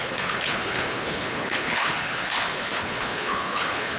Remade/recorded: remade